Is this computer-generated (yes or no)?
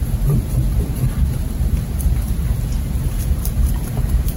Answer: yes